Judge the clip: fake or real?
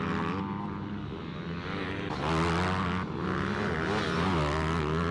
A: real